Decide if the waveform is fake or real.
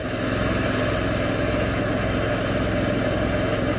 real